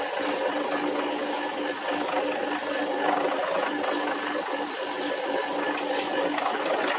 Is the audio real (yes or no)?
yes